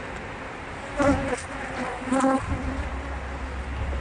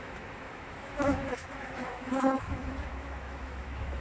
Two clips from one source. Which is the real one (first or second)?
first